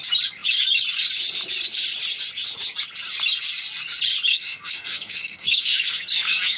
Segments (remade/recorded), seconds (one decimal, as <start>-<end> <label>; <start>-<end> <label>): 0.0-4.3 recorded; 4.3-6.6 remade